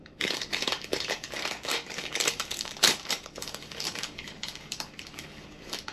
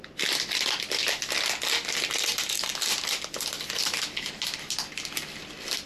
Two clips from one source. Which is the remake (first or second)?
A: first